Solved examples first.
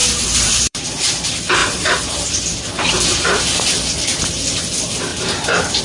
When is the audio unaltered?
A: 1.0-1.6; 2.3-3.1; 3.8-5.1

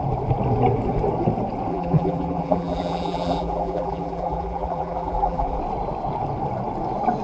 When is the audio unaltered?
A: 0.0-1.7; 5.6-7.2

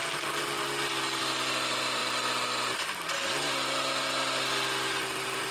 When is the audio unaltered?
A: 0.0-5.5

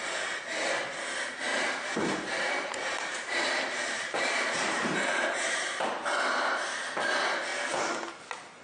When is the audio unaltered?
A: 0.0-1.5; 6.7-8.6

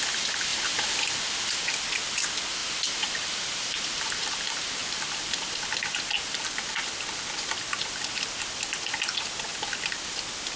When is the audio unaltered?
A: 0.0-2.6; 5.3-10.6

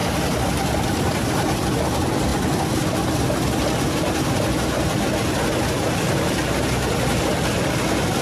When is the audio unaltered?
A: 0.0-8.2

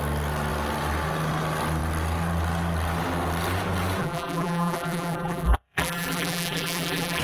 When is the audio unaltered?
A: 0.0-4.0

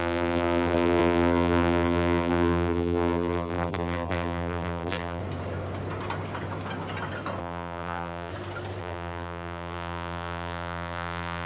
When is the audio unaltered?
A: 5.2-7.4; 8.3-8.8